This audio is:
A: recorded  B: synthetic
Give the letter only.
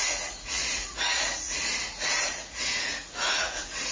B